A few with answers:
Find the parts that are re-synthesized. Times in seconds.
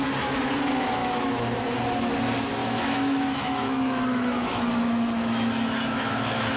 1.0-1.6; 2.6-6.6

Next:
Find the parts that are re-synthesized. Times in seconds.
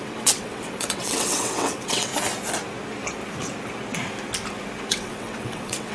0.0-2.1; 4.9-5.9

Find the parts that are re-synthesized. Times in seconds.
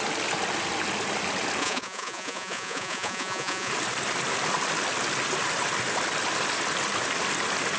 1.6-3.7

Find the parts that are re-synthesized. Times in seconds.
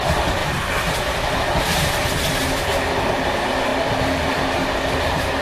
none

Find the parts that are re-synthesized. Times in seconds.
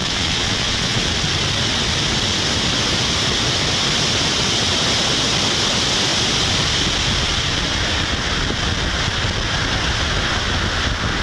0.0-1.0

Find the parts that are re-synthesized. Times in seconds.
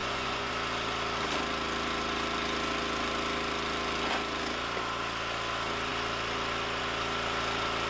0.0-0.5